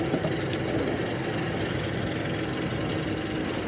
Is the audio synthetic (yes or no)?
no